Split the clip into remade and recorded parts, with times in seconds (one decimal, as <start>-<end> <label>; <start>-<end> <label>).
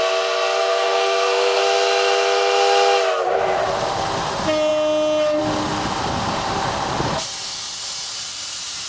0.0-0.6 recorded; 0.6-1.6 remade; 1.6-8.9 recorded